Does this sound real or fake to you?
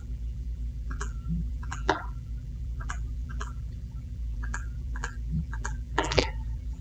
fake